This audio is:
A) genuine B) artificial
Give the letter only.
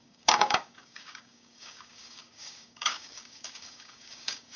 B